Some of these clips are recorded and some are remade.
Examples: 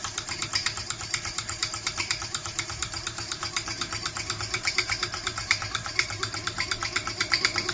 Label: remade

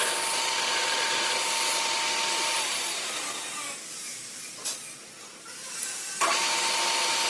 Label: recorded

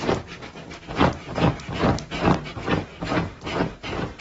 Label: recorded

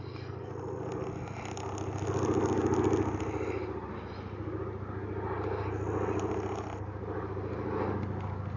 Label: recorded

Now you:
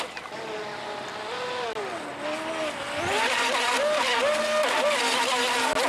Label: recorded